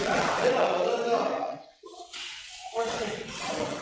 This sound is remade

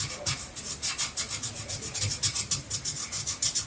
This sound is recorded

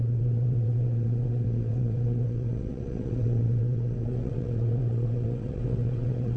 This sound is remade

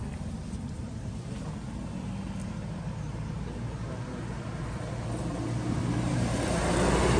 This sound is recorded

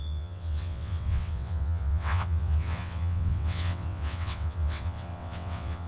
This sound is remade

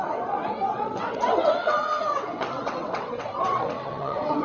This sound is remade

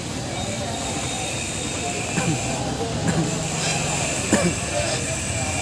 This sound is recorded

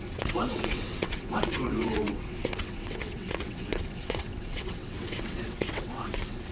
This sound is remade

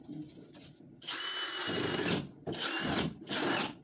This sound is recorded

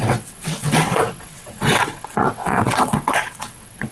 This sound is remade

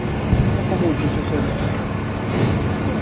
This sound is recorded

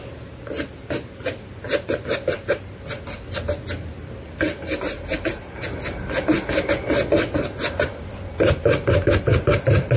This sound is recorded